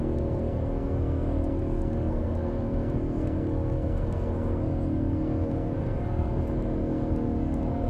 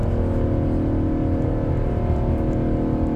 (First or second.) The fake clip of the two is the first